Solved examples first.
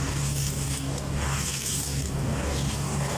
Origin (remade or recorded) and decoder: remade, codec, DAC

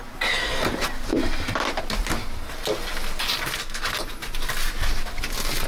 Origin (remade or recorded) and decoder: recorded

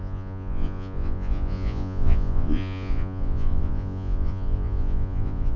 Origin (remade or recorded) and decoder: remade, vocoder, Vocos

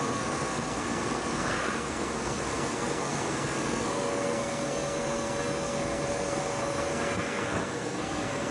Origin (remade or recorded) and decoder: remade, codec, SNAC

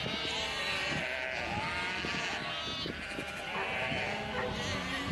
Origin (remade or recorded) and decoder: recorded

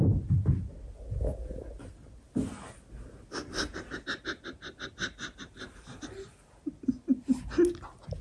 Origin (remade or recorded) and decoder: recorded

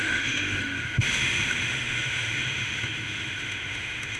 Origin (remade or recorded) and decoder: remade, autoencoder, DAC-VAE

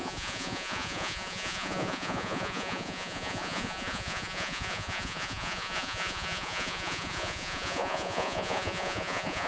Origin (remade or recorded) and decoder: remade, vocoder, Vocos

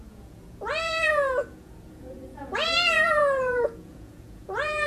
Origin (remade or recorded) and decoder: remade, vocoder, Vocos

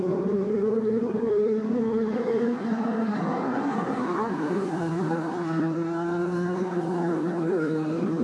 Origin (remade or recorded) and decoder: remade, codec, SNAC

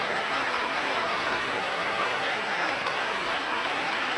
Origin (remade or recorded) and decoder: remade, codec, SNAC